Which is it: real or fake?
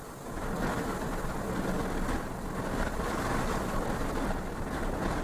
real